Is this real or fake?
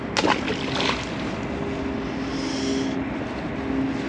real